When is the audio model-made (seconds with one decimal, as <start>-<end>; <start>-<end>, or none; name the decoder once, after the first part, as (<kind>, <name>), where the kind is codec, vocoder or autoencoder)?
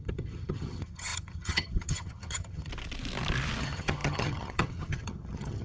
0.0-2.7 (vocoder, HiFi-GAN); 3.6-5.6